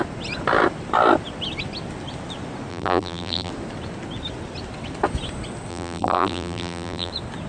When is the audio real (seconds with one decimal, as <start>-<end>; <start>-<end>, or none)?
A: 0.0-2.7; 3.5-5.7; 7.1-7.5